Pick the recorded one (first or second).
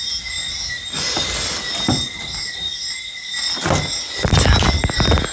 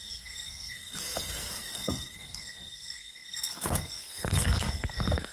first